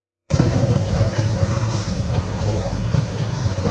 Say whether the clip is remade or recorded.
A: remade